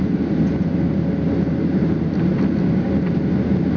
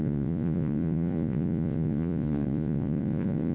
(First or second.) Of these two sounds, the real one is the first